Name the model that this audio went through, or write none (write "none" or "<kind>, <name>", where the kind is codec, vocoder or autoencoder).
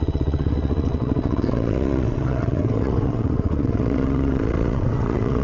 vocoder, WaveNeXt